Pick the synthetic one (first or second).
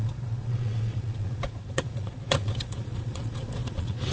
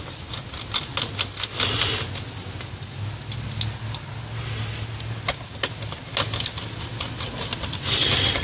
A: first